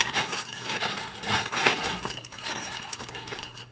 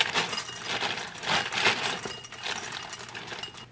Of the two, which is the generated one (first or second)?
first